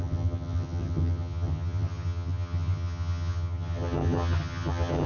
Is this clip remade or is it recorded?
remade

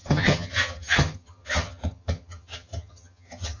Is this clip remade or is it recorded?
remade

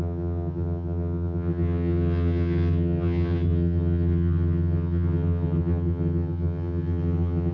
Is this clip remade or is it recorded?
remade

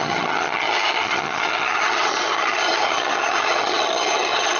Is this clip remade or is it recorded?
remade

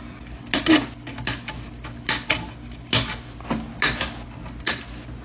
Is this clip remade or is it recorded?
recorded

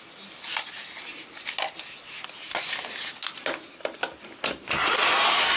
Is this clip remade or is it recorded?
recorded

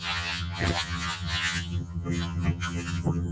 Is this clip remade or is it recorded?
remade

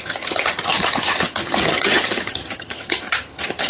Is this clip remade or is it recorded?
remade